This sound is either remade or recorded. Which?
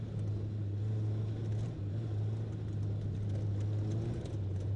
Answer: recorded